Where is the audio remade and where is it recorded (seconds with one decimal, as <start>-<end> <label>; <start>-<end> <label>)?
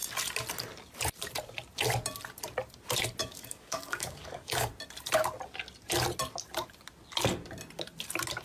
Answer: 0.0-3.2 recorded; 3.2-4.7 remade; 4.7-8.4 recorded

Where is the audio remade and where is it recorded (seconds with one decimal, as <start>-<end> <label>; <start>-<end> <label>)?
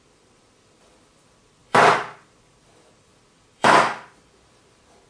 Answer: 0.0-5.1 remade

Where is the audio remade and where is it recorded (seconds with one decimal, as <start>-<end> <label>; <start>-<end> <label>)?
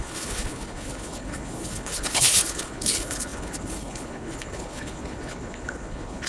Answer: 0.0-6.3 remade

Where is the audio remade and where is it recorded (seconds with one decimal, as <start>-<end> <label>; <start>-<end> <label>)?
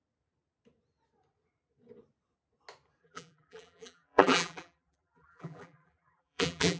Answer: 0.0-3.0 recorded; 3.0-6.8 remade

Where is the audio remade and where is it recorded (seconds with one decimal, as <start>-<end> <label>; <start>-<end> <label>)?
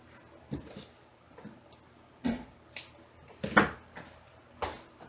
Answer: 0.0-5.1 recorded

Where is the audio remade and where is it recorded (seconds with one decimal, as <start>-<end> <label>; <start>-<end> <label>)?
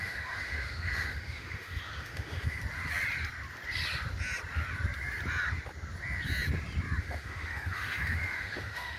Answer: 0.0-2.6 remade; 2.6-7.0 recorded; 7.0-9.0 remade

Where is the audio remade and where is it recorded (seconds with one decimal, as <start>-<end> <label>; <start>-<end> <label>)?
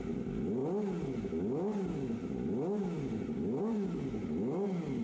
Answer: 0.0-5.0 recorded